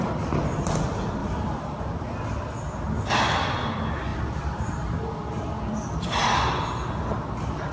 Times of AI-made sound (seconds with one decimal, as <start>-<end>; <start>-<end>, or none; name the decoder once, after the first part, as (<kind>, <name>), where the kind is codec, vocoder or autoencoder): 1.2-2.0 (vocoder, BigVGAN v2); 4.1-4.7

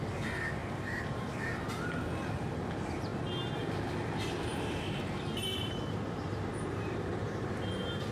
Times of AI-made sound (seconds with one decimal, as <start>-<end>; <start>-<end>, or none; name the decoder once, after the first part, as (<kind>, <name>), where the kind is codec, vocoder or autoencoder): 0.6-1.7 (vocoder, BigVGAN v2); 4.5-8.1

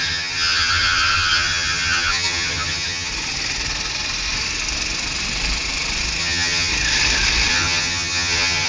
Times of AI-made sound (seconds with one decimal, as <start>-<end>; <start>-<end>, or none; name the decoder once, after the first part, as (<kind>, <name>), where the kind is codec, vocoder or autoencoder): 0.0-3.1 (vocoder, HiFi-GAN); 6.2-6.7; 7.5-8.7

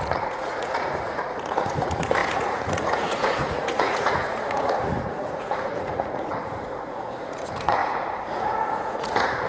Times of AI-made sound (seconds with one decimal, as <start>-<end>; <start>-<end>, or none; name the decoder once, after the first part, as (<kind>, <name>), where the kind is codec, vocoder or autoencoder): 0.0-9.5 (vocoder, Vocos)

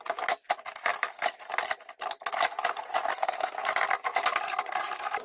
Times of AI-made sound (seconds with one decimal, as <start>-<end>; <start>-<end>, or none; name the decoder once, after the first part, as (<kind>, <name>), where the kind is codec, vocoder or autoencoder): 3.1-3.6 (codec, SNAC)

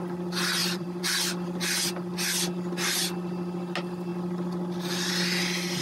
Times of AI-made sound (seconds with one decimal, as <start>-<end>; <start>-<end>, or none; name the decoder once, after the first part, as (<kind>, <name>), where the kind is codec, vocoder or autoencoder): 0.6-1.9 (vocoder, BigVGAN v2)

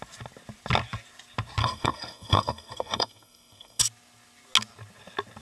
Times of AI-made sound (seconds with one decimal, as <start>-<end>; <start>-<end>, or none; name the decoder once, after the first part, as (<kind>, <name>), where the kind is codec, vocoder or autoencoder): 1.6-3.8 (codec, SNAC)

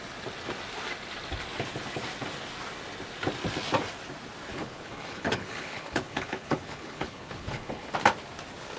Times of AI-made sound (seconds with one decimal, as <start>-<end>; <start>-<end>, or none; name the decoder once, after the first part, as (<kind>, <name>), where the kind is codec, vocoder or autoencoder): 4.5-7.9 (codec, HILCodec)